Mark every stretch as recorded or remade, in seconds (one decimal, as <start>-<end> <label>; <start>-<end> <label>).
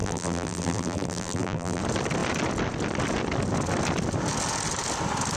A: 0.0-1.8 remade; 1.8-5.4 recorded